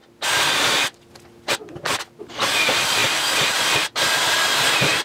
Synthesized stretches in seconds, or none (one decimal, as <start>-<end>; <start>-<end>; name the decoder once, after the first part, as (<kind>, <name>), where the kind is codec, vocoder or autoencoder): 2.2-5.0 (vocoder, BigVGAN v2)